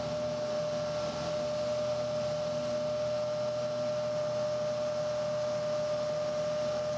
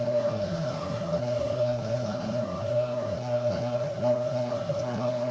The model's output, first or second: second